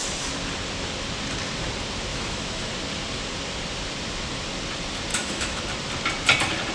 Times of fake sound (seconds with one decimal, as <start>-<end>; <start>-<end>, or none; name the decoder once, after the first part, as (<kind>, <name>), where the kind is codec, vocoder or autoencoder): 2.1-2.7 (autoencoder, DAC-VAE); 5.1-5.6